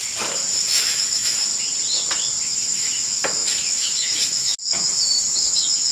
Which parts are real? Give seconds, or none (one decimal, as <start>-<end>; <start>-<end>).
0.0-0.6; 1.5-2.4